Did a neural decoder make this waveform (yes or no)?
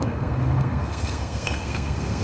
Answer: yes